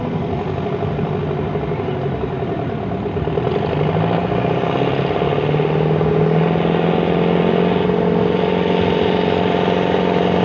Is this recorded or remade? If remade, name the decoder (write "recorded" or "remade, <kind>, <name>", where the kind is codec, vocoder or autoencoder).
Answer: recorded